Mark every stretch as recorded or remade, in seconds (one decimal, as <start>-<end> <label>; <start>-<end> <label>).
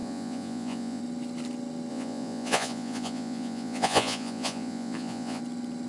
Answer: 0.0-1.0 remade; 1.0-1.9 recorded; 1.9-5.4 remade; 5.4-5.9 recorded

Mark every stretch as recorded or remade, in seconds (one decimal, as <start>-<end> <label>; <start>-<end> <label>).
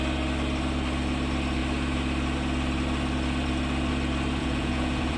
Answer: 0.0-4.4 recorded; 4.4-5.2 remade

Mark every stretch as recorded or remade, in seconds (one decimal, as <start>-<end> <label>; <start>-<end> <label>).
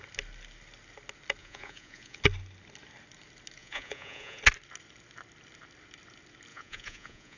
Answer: 0.0-1.4 recorded; 1.4-2.2 remade; 2.2-3.6 recorded; 3.6-4.4 remade; 4.4-6.5 recorded; 6.5-7.4 remade